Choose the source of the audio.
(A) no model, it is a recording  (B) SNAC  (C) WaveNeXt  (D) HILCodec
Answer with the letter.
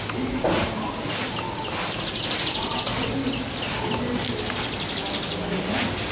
A